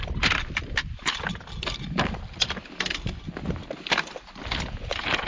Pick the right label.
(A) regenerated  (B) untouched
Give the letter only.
B